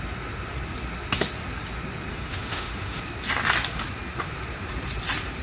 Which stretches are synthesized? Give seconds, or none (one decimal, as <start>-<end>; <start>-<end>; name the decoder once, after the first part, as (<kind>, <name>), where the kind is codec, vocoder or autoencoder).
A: 2.1-3.0 (autoencoder, DAC-VAE)